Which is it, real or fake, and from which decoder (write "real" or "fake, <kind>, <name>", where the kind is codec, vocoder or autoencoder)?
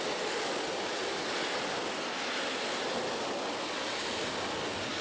real